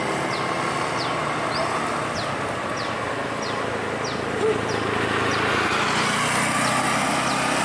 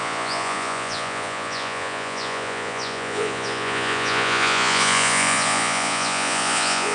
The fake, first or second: second